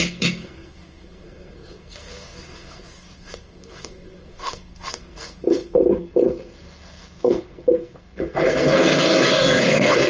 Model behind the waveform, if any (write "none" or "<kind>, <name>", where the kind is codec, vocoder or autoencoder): codec, SNAC